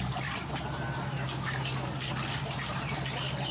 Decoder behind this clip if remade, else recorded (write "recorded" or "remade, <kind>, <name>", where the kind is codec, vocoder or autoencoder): recorded